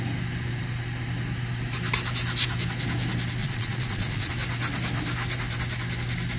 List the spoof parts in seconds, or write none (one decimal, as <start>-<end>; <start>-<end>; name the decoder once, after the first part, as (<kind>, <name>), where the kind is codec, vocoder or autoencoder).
3.4-4.3 (vocoder, Vocos)